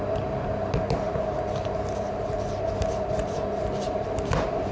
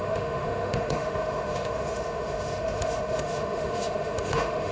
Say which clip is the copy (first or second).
second